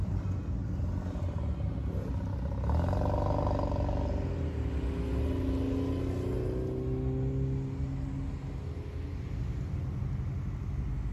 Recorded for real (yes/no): yes